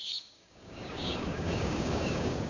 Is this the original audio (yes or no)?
no